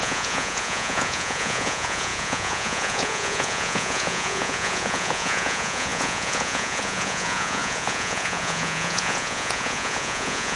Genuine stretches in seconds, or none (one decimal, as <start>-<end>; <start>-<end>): none